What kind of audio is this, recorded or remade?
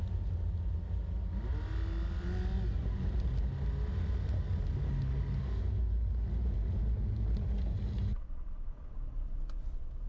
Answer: recorded